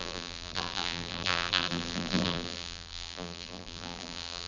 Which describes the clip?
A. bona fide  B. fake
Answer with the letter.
B